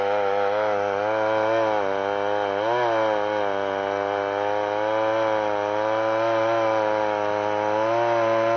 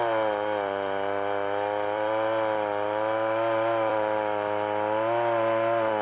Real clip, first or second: first